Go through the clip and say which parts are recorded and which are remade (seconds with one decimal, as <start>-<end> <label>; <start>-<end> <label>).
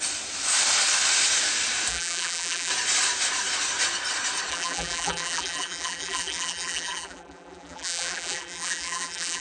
0.0-1.9 recorded; 1.9-2.7 remade; 2.7-4.5 recorded; 4.5-9.4 remade